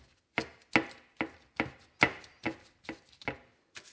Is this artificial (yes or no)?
no